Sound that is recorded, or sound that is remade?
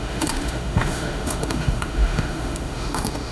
remade